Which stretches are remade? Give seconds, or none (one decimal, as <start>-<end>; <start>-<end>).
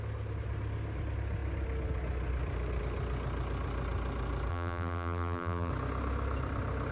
4.5-5.7